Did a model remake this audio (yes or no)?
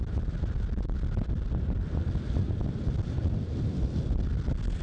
no